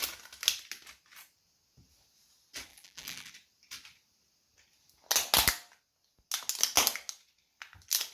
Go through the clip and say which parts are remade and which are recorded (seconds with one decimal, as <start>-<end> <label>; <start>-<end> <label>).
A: 0.0-2.7 recorded; 2.7-3.3 remade; 3.3-8.1 recorded